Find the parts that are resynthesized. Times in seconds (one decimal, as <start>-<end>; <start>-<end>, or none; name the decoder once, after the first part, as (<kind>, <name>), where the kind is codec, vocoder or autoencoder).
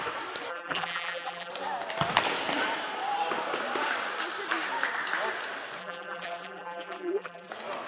0.5-1.5 (vocoder, BigVGAN v2); 5.8-7.5